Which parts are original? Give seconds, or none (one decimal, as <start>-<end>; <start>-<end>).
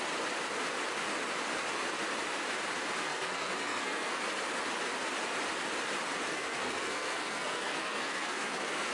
0.0-3.0; 4.2-6.3